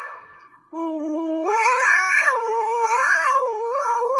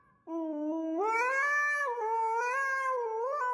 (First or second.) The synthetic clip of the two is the first